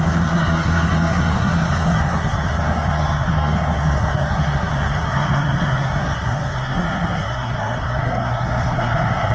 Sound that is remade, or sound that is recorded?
remade